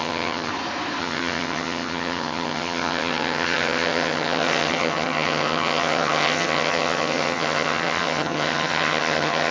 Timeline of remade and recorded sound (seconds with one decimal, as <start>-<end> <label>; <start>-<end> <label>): 0.0-0.5 remade; 0.5-1.0 recorded; 1.0-9.5 remade